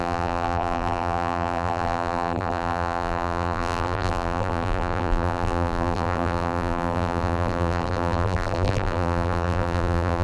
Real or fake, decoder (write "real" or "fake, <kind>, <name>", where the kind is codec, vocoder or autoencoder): fake, vocoder, BigVGAN v2